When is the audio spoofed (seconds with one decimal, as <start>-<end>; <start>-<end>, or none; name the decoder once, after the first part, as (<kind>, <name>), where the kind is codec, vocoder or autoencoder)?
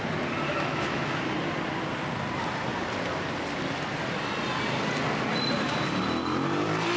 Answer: 0.5-1.2 (autoencoder, DAC-VAE)